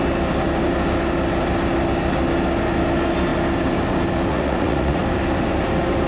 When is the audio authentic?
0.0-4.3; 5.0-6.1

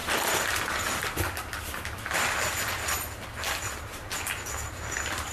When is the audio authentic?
1.2-5.3

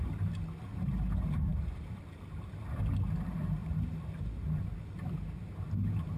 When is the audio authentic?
0.0-1.5; 2.8-3.6; 4.8-6.2

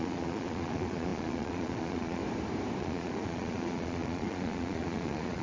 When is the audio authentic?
2.2-2.8

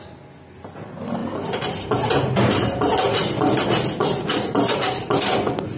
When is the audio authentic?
0.0-5.8

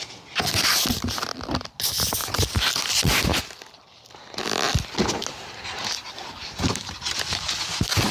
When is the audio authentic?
0.0-2.2; 3.8-5.2; 5.8-8.1

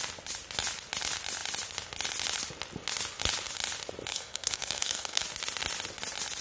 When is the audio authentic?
0.0-4.1; 5.2-6.4

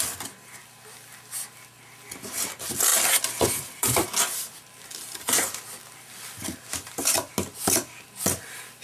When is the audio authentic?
0.0-2.9; 4.5-6.4; 7.3-8.8